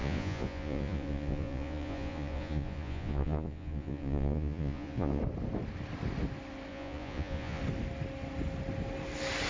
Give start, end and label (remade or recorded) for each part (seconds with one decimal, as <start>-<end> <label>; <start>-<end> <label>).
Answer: 0.0-5.2 remade; 5.2-6.7 recorded; 6.7-7.6 remade; 7.6-9.5 recorded

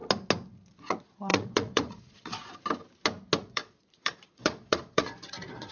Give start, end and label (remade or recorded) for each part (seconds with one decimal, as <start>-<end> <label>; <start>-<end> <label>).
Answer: 0.0-0.7 recorded; 0.7-2.4 remade; 2.4-3.4 recorded; 3.4-5.7 remade

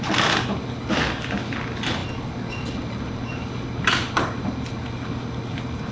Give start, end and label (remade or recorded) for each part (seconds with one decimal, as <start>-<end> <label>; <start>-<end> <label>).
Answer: 0.0-5.9 recorded

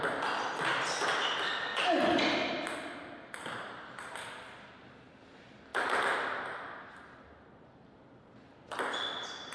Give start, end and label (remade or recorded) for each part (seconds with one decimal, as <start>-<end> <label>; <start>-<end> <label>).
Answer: 0.0-9.5 recorded

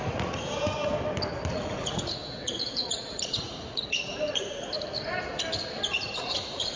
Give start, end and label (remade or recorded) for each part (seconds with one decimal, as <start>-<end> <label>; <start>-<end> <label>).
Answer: 0.0-0.9 remade; 0.9-1.5 recorded; 1.5-4.7 remade; 4.7-5.9 recorded; 5.9-6.8 remade